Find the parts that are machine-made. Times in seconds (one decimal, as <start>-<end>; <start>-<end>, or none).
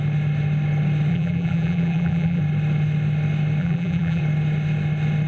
1.1-2.4; 3.6-4.2